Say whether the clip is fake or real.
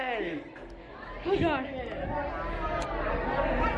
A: real